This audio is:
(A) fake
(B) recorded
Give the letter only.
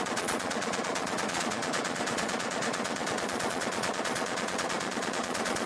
A